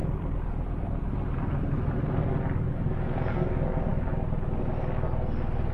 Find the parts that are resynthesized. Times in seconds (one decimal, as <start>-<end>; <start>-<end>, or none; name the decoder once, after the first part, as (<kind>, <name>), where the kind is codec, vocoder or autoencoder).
0.0-2.2 (vocoder, BigVGAN v2)